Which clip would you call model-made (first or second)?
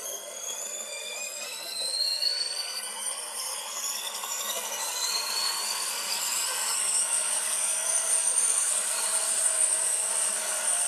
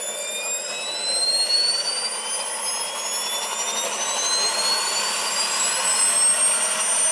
first